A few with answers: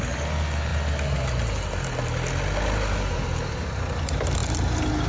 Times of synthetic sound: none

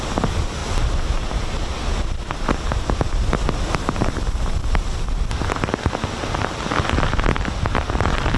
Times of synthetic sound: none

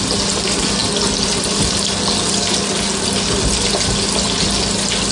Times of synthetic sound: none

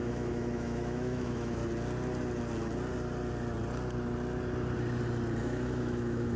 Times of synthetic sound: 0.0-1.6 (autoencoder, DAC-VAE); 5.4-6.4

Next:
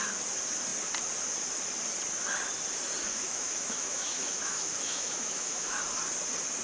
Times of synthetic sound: 3.1-5.8 (autoencoder, DAC-VAE)

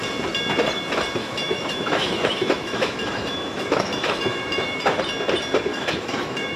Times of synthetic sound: 1.2-5.0 (autoencoder, DAC-VAE); 5.7-6.6